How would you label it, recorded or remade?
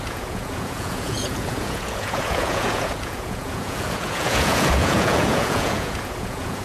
remade